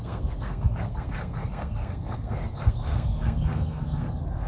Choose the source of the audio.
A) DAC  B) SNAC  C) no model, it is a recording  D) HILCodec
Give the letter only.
B